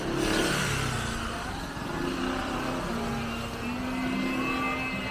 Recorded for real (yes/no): yes